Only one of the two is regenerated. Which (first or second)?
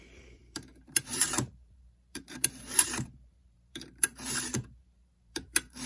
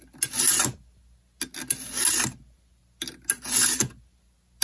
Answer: first